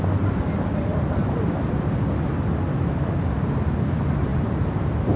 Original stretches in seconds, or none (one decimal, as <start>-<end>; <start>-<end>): 0.0-5.2